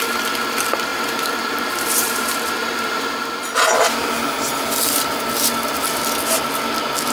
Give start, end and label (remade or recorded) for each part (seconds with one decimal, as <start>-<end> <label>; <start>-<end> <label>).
0.0-0.9 recorded; 0.9-4.1 remade; 4.1-7.1 recorded